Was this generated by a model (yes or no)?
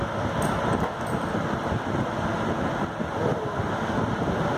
no